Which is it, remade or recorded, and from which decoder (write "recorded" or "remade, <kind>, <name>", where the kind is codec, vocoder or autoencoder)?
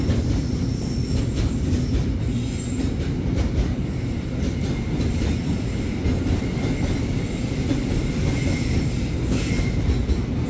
recorded